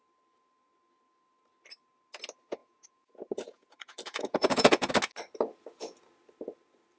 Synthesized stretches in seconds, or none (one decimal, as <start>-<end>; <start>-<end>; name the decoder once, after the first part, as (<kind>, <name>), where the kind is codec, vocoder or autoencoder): 2.6-4.9 (vocoder, Vocos)

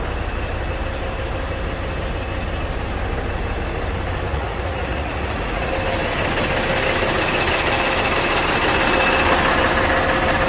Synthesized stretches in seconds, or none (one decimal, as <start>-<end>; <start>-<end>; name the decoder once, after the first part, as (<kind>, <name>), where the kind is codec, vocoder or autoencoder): 4.3-5.7 (vocoder, Vocos)

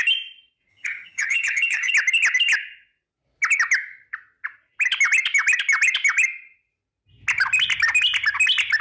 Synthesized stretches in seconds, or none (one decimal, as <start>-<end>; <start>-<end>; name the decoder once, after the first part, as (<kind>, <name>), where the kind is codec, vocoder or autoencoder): 0.7-1.9 (vocoder, HiFi-GAN)